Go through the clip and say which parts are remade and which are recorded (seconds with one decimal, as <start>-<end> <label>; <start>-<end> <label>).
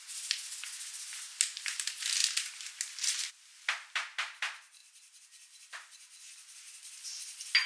0.0-2.2 recorded; 2.2-3.3 remade; 3.3-7.7 recorded